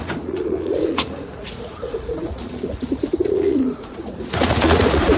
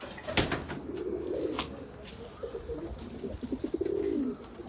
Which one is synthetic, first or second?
first